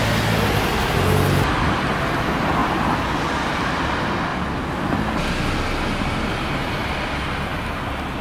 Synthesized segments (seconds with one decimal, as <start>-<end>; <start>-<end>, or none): none